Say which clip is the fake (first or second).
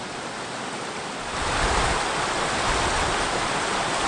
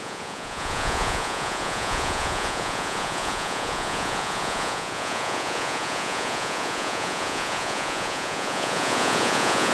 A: second